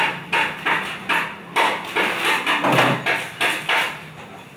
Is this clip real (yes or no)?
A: yes